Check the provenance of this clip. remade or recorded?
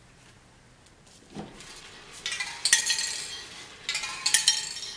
recorded